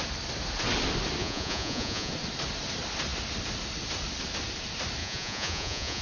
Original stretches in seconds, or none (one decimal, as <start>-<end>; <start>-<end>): 0.0-1.2; 2.1-5.0